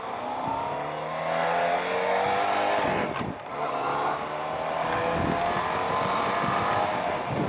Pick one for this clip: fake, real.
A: real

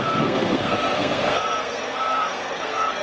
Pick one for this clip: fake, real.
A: fake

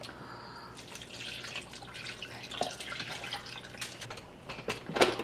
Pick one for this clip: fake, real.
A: real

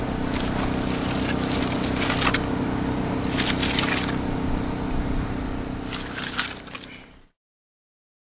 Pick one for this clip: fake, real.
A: real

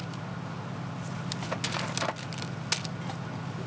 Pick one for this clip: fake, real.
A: real